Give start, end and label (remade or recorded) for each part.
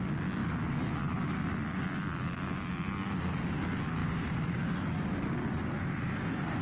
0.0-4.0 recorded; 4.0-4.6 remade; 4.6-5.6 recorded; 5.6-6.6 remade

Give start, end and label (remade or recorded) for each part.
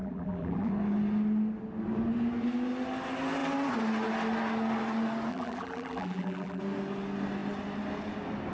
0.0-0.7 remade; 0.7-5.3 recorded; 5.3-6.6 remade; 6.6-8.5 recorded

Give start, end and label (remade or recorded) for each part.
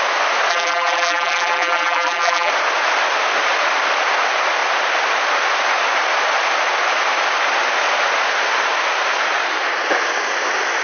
0.0-0.5 recorded; 0.5-2.5 remade; 2.5-10.8 recorded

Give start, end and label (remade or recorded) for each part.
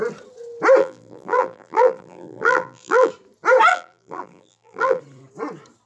0.0-0.8 recorded; 0.8-3.1 remade; 3.1-3.7 recorded; 3.7-5.0 remade; 5.0-5.9 recorded